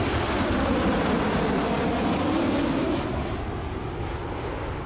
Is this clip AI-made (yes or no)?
no